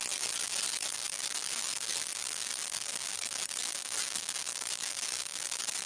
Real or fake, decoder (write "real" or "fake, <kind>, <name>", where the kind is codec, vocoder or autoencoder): real